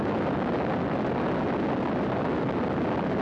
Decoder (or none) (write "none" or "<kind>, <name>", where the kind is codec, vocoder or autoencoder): none